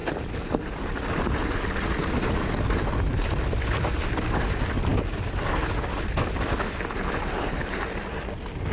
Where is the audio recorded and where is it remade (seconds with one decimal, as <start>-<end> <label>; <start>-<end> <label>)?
0.0-8.7 recorded